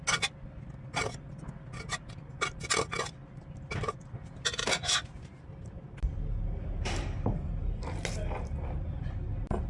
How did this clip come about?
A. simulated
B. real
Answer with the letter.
B